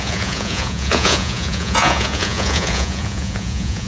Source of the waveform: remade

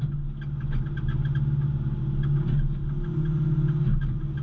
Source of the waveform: recorded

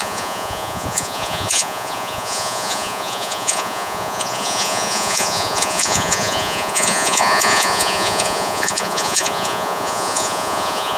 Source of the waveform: remade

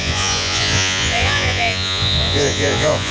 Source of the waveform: remade